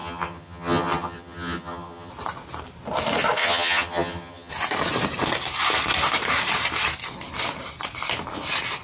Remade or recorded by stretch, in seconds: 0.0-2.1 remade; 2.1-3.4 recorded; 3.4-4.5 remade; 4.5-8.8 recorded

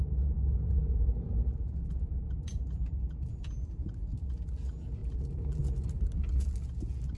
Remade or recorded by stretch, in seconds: 0.0-0.8 recorded; 0.8-3.7 remade; 3.7-5.0 recorded; 5.0-5.7 remade; 5.7-7.2 recorded

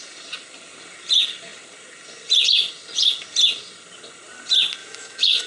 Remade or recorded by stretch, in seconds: 0.0-4.8 recorded; 4.8-5.5 remade

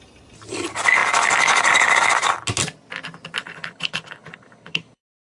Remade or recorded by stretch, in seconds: 0.0-3.4 recorded; 3.4-5.0 remade; 5.0-5.4 recorded